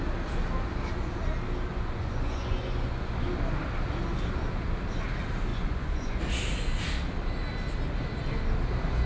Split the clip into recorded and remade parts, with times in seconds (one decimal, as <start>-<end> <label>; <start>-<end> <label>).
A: 0.0-1.7 recorded; 1.7-3.1 remade; 3.1-5.5 recorded; 5.5-6.2 remade; 6.2-9.1 recorded